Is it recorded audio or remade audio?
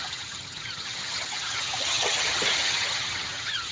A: remade